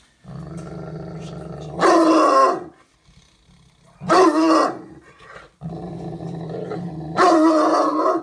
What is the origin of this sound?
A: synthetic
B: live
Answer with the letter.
B